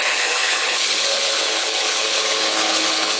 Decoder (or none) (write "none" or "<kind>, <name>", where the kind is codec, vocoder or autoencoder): codec, HILCodec